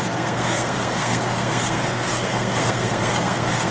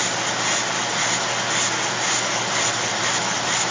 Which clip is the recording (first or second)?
second